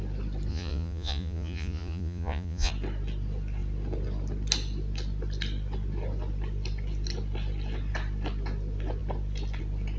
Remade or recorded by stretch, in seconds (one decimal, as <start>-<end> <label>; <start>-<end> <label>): 0.0-0.5 recorded; 0.5-2.7 remade; 2.7-10.0 recorded